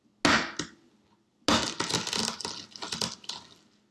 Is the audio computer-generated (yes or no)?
no